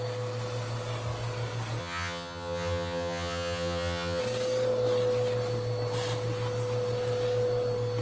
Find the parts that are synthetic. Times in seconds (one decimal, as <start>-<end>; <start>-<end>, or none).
1.8-4.2